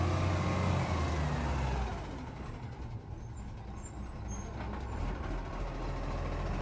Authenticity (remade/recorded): recorded